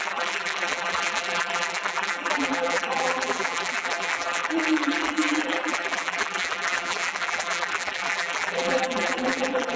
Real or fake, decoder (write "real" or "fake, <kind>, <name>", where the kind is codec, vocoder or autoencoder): fake, vocoder, BigVGAN v2